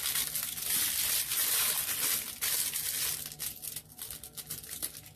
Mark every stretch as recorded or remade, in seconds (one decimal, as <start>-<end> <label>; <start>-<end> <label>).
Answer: 0.0-5.2 recorded